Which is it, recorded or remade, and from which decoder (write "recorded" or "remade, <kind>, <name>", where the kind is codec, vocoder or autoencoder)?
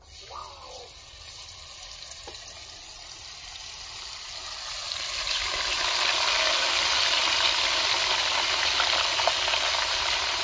recorded